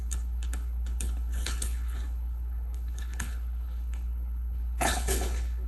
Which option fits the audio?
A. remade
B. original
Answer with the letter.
A